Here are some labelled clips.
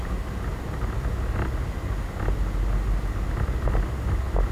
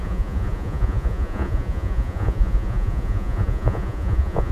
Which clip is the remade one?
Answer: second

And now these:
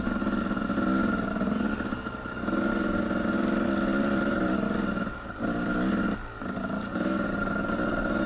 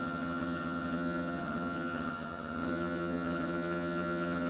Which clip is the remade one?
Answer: second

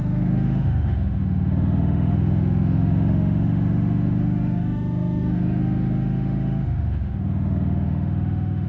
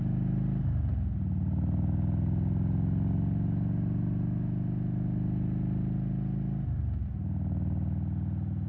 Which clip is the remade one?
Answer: first